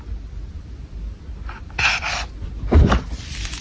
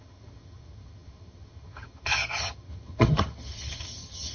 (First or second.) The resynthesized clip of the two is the second